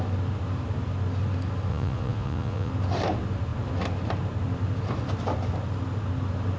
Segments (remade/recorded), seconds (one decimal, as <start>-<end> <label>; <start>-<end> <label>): 0.0-1.7 recorded; 1.7-2.7 remade; 2.7-6.6 recorded